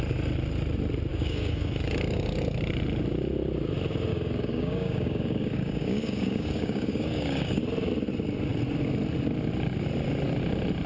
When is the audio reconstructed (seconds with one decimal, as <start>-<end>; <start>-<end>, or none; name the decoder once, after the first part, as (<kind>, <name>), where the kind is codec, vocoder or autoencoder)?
1.1-1.7 (codec, DAC); 4.1-7.6